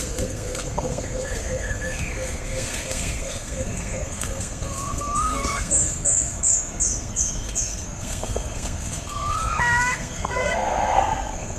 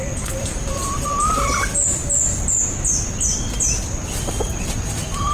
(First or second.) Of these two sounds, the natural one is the second